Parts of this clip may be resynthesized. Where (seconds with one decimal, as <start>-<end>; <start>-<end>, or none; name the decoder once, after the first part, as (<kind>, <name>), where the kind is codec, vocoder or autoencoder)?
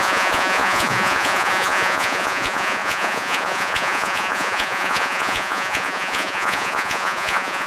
0.0-7.7 (vocoder, Vocos)